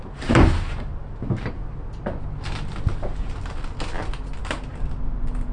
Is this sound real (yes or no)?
yes